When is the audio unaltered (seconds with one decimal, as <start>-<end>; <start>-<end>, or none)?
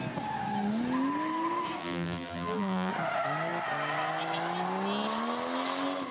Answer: 0.0-1.8; 2.9-6.1